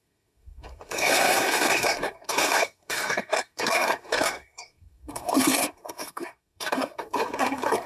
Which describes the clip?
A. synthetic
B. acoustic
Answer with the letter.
A